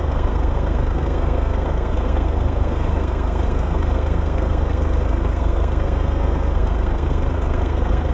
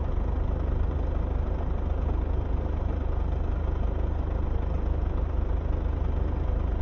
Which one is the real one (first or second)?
second